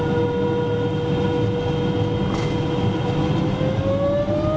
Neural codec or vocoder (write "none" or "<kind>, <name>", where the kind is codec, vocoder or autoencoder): none